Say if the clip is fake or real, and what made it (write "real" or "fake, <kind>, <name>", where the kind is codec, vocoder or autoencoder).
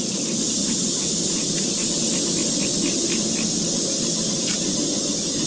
real